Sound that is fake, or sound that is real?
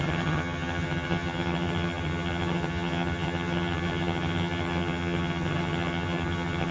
fake